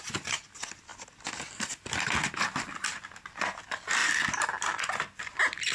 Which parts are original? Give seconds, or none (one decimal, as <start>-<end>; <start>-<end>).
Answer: 0.0-5.7